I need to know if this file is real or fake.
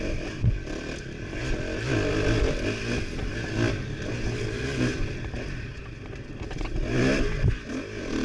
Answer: real